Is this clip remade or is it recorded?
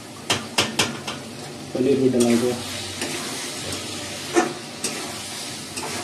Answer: recorded